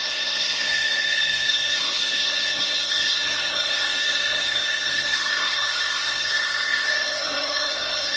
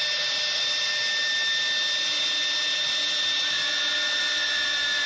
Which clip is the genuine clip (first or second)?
second